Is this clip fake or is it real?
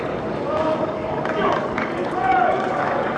fake